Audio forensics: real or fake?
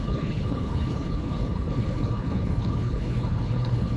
fake